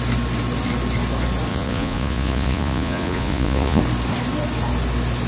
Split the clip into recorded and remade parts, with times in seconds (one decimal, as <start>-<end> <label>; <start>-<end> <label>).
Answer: 0.0-1.5 recorded; 1.5-3.8 remade; 3.8-5.3 recorded